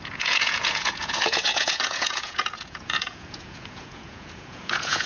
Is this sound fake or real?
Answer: fake